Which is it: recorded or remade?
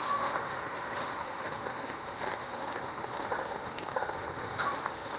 remade